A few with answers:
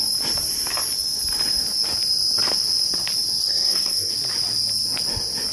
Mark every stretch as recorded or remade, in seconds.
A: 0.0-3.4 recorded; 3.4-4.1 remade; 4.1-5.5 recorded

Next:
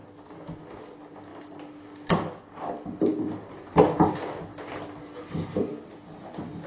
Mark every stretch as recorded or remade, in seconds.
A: 0.0-6.7 recorded